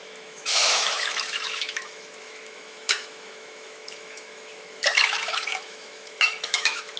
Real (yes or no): no